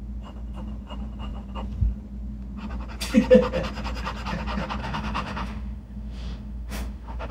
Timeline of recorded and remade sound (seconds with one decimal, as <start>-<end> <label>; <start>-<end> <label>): 0.0-4.8 recorded; 4.8-7.3 remade